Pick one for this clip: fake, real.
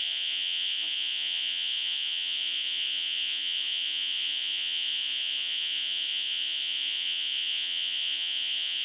fake